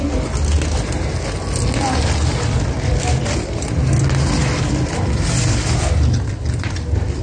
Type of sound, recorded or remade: recorded